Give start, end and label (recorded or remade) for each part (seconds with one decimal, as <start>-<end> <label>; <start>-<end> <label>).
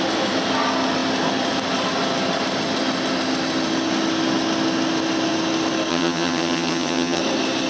0.0-5.9 recorded; 5.9-7.2 remade; 7.2-7.7 recorded